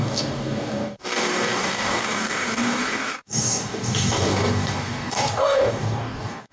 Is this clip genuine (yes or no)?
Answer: no